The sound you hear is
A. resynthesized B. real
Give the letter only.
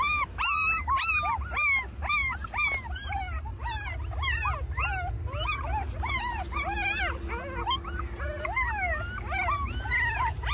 B